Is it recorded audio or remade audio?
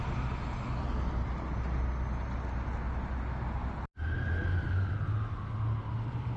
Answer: recorded